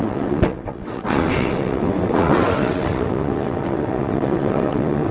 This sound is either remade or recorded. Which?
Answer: remade